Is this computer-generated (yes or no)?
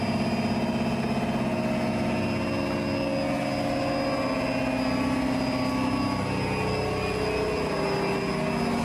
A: no